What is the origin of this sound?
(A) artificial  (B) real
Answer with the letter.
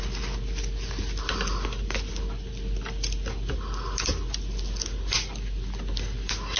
B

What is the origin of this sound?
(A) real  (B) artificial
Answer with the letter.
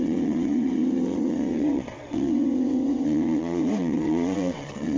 B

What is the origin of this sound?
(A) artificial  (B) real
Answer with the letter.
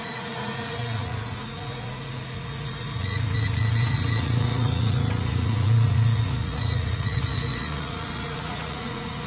A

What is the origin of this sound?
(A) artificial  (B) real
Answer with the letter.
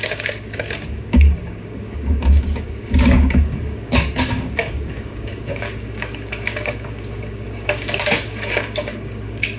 A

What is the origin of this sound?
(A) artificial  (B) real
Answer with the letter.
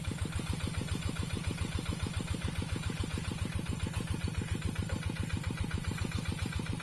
A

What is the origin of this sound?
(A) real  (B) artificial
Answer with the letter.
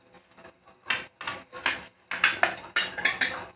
A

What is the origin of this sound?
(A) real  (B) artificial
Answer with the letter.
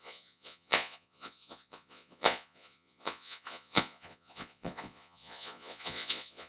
B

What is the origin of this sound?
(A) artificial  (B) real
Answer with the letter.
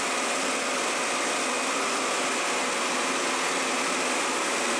B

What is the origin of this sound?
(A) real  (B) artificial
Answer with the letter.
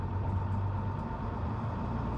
A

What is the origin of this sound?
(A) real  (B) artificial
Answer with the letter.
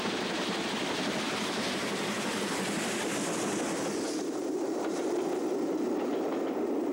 B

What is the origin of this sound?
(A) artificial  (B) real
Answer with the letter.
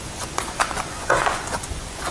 A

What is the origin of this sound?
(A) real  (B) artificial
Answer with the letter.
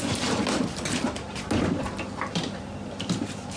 A